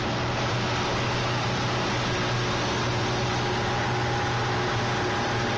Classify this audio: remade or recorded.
recorded